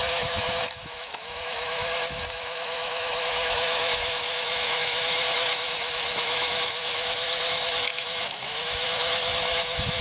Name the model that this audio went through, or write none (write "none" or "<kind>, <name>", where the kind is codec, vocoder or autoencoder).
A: autoencoder, DAC-VAE